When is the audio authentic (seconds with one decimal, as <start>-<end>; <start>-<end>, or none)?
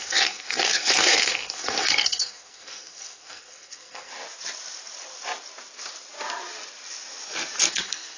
4.1-7.7